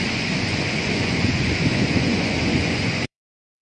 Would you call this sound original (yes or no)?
no